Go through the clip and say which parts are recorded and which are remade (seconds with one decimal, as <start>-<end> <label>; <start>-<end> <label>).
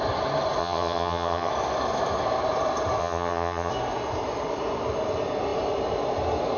0.0-0.6 recorded; 0.6-1.5 remade; 1.5-3.0 recorded; 3.0-3.7 remade; 3.7-6.6 recorded